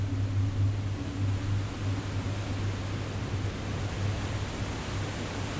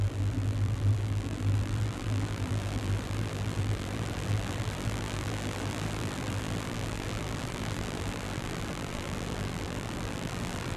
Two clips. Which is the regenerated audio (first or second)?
second